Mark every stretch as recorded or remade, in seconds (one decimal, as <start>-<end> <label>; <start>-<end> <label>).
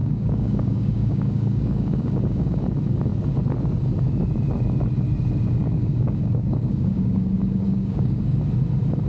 0.0-2.6 remade; 2.6-5.6 recorded; 5.6-8.4 remade; 8.4-9.1 recorded